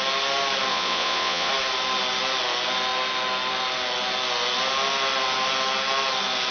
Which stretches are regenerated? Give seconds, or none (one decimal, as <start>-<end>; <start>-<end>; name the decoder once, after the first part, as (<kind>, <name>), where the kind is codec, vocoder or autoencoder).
0.7-1.5 (vocoder, Vocos)